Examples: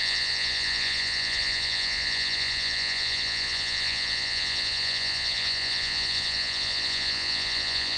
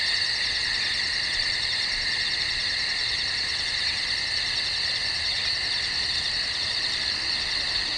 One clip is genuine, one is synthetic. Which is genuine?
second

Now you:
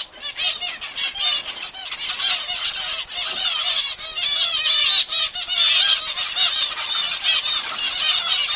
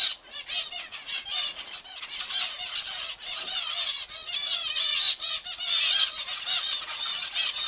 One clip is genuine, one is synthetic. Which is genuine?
first